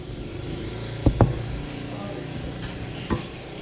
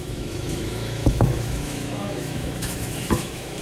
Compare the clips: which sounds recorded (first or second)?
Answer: first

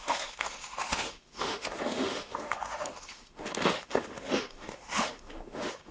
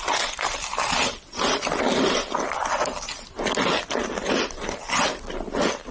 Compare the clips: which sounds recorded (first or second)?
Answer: second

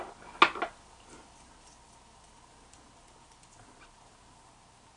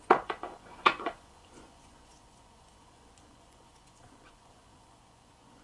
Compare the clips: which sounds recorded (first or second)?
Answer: first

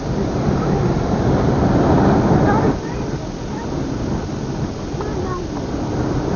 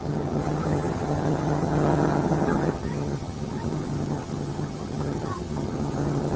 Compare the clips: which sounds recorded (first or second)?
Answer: first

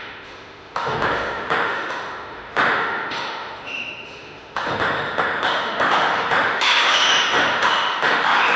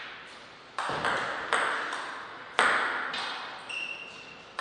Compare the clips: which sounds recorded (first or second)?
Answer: second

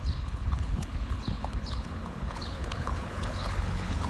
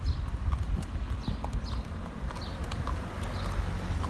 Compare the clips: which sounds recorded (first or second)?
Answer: second